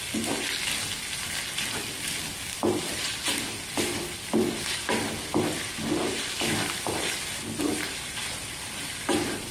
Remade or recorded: recorded